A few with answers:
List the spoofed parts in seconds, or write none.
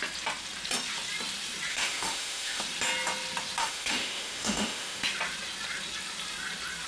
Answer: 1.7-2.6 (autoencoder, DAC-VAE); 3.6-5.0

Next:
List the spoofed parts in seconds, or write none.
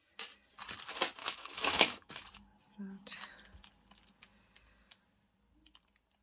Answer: 1.2-2.1 (autoencoder, DAC-VAE)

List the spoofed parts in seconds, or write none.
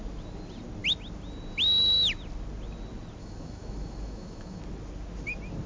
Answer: 3.2-4.6 (autoencoder, DAC-VAE)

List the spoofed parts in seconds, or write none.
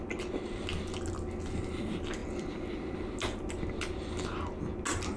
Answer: none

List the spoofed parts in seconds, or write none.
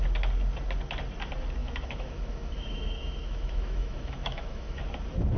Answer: 1.6-4.8 (autoencoder, DAC-VAE)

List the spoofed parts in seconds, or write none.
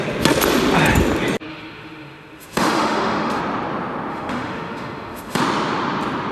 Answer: 1.5-3.4 (autoencoder, DAC-VAE); 4.1-5.4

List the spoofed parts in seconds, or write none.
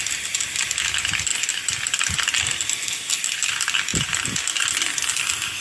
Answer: none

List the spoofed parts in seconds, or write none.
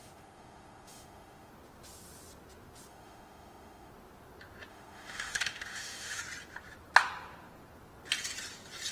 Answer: 0.0-1.5 (autoencoder, DAC-VAE); 2.9-3.9; 4.7-6.2